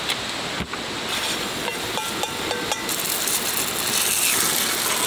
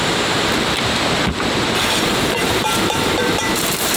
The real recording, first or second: first